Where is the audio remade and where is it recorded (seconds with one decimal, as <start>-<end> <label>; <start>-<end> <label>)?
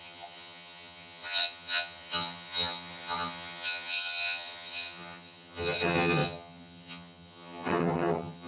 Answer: 0.0-8.5 remade